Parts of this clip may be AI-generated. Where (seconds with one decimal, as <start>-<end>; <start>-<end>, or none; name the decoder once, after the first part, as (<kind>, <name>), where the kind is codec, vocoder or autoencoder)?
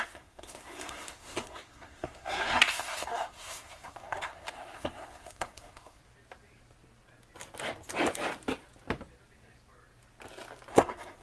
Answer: 0.0-6.0 (codec, SNAC); 10.7-11.2